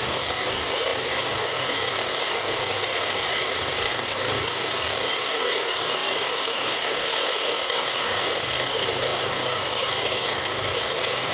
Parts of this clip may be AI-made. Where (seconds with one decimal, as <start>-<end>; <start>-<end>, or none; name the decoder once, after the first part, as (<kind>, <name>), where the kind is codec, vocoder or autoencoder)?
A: 0.0-11.3 (codec, DAC)